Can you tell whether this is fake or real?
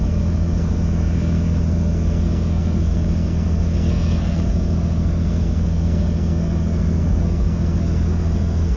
fake